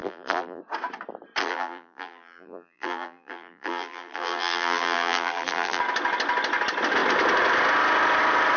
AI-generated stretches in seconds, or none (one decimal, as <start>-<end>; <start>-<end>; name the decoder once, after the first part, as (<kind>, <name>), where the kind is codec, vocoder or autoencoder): 0.0-0.6 (vocoder, BigVGAN v2); 1.4-5.8